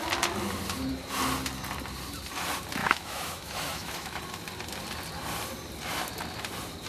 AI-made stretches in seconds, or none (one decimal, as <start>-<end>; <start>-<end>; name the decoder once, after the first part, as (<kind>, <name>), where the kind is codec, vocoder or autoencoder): 2.8-4.2 (autoencoder, DAC-VAE)